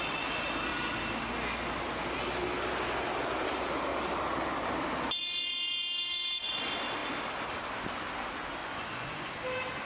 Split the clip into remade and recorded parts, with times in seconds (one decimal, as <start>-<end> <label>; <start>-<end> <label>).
0.0-8.6 recorded; 8.6-9.3 remade; 9.3-9.9 recorded